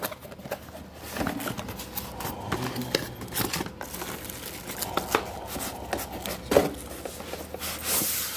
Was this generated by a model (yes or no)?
no